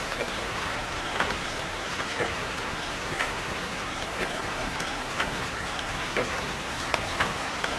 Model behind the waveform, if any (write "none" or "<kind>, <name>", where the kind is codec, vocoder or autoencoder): codec, SNAC